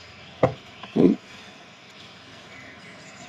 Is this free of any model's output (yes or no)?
no